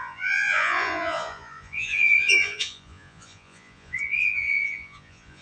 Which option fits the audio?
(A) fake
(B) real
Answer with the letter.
A